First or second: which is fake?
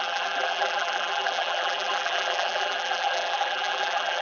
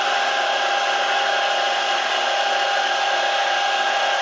first